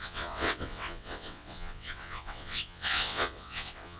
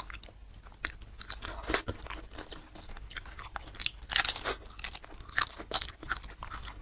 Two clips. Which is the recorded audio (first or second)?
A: second